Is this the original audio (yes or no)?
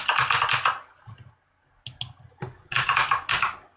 yes